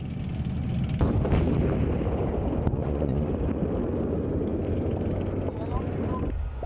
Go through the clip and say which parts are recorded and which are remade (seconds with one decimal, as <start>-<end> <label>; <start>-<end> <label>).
0.0-2.7 recorded; 2.7-3.3 remade; 3.3-6.7 recorded